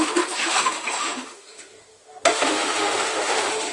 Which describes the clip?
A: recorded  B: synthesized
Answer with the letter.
B